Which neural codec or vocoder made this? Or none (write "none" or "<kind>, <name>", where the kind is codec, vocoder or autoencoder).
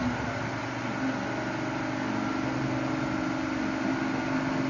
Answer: none